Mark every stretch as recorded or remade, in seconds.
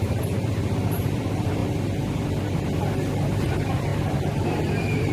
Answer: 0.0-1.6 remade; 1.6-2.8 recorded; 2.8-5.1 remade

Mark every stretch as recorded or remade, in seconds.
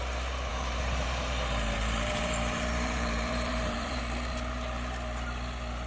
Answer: 0.0-0.5 recorded; 0.5-4.0 remade; 4.0-5.9 recorded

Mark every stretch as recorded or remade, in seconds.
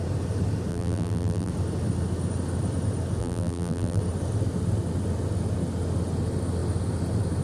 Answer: 0.0-0.7 recorded; 0.7-1.5 remade; 1.5-3.2 recorded; 3.2-4.0 remade; 4.0-7.4 recorded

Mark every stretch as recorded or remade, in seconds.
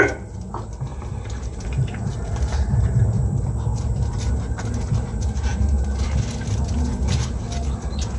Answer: 0.0-0.9 recorded; 0.9-3.1 remade; 3.1-8.2 recorded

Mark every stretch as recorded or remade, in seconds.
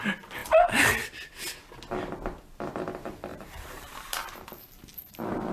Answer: 0.0-3.3 recorded; 3.3-5.5 remade